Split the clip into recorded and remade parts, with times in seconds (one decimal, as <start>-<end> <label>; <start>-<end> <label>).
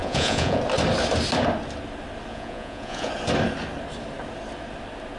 0.0-0.6 remade; 0.6-2.3 recorded; 2.3-3.1 remade; 3.1-5.2 recorded